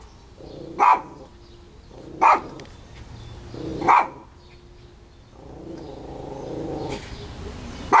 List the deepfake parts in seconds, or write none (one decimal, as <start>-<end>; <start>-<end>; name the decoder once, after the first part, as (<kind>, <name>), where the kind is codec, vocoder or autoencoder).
none